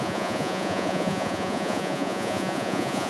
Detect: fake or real fake